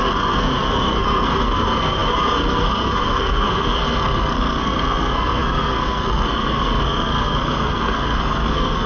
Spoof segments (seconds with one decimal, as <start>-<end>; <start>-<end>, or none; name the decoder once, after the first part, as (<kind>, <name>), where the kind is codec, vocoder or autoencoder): 0.0-8.9 (codec, SNAC)